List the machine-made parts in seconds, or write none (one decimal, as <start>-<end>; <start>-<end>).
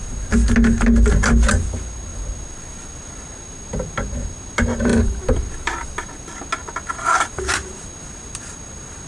4.9-6.4